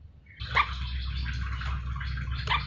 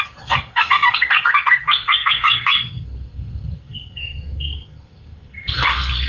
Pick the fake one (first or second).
second